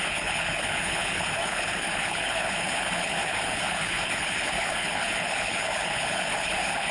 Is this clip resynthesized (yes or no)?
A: yes